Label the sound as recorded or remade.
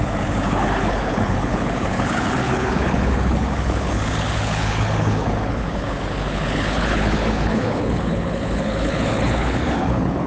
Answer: remade